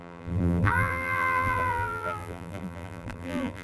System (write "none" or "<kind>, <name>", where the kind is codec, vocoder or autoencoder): vocoder, BigVGAN v2